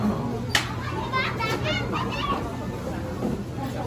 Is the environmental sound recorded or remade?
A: recorded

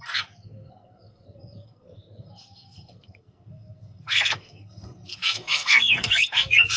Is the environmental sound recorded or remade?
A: remade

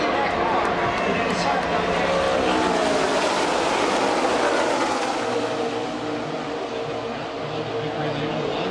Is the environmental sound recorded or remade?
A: recorded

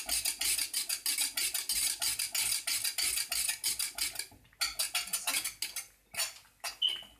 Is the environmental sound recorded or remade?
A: recorded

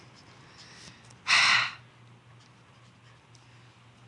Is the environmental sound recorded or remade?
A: recorded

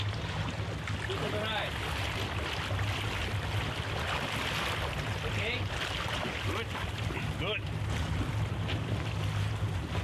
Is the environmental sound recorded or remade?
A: recorded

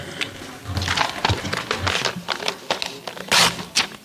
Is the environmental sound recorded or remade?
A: recorded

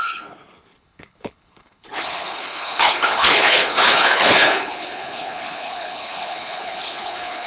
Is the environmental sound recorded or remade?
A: remade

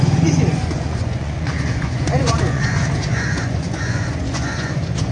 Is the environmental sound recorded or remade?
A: remade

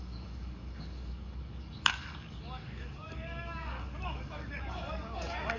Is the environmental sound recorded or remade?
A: remade